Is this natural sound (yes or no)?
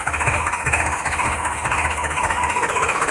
no